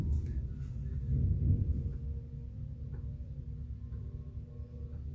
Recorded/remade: recorded